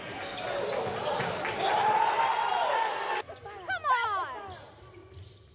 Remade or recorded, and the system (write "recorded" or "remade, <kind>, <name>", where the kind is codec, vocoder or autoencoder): recorded